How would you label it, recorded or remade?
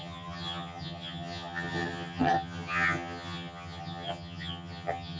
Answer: remade